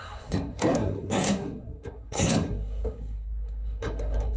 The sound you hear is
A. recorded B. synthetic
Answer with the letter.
B